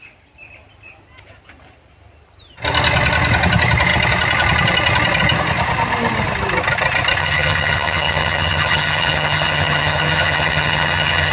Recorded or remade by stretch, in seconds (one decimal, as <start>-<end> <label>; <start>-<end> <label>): 0.0-7.2 recorded; 7.2-11.3 remade